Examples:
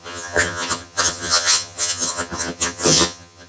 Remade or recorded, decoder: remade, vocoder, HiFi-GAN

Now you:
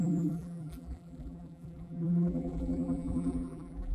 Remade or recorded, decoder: remade, vocoder, BigVGAN v2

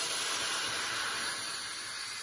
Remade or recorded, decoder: recorded